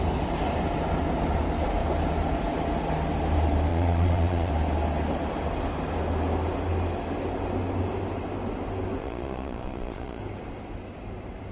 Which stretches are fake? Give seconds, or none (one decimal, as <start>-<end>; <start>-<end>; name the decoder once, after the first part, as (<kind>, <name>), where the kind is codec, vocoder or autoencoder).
3.7-4.5 (vocoder, Vocos); 9.0-10.2